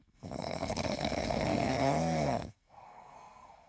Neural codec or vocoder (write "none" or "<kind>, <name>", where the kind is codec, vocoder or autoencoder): codec, SNAC